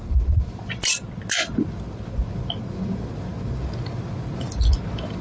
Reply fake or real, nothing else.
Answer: real